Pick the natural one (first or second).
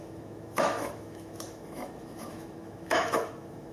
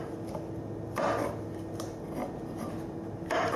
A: second